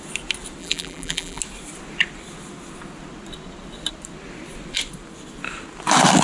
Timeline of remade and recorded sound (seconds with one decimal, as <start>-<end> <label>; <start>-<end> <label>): 0.0-0.6 recorded; 0.6-1.4 remade; 1.4-6.2 recorded

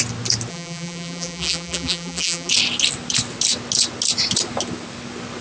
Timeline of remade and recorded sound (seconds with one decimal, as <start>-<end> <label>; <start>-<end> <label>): 0.0-0.5 recorded; 0.5-2.5 remade; 2.5-5.4 recorded

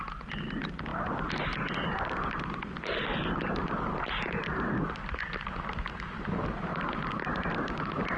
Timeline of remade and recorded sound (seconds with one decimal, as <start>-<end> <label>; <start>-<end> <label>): 0.0-8.2 recorded

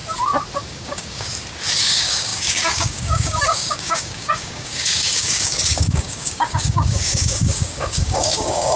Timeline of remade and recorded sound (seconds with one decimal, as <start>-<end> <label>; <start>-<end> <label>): 0.0-0.7 recorded; 0.7-1.3 remade; 1.3-1.8 recorded; 1.8-8.8 remade

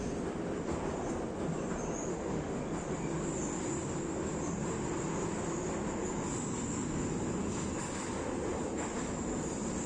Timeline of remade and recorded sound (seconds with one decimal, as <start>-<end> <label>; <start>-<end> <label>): 0.0-2.1 recorded; 2.1-2.6 remade; 2.6-9.9 recorded

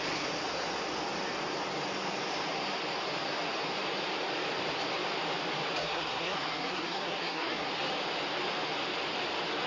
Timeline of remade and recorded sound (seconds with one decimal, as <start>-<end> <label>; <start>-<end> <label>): 0.0-5.8 recorded; 5.8-7.7 remade; 7.7-9.7 recorded